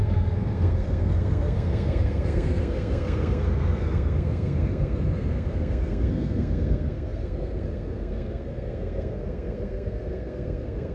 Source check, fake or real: fake